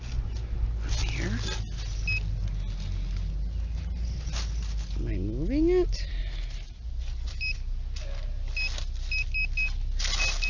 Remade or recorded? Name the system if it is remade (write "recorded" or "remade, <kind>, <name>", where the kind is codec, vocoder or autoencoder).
recorded